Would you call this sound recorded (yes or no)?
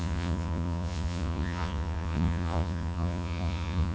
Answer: no